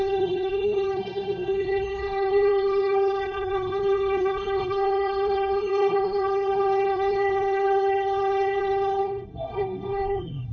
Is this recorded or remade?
remade